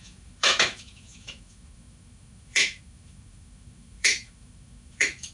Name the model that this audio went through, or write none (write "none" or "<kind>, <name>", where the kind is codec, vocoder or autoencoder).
autoencoder, DAC-VAE